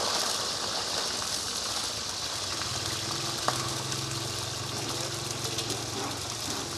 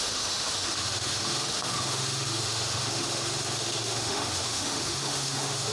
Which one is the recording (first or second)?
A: first